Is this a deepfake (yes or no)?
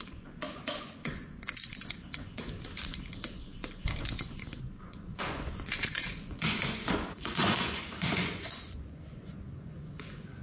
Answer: yes